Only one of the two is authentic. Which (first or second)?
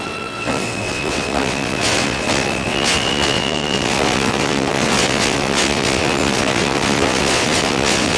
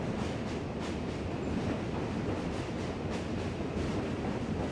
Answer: second